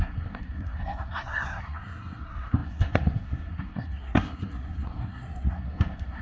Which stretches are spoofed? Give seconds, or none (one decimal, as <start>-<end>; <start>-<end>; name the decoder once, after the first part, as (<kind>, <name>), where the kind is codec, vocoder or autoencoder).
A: 0.0-6.2 (codec, SNAC)